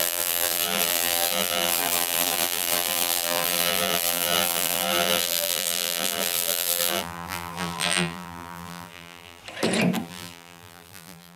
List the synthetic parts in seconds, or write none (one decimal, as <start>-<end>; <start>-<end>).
0.0-9.4; 10.0-11.4